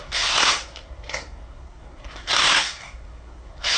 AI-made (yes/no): yes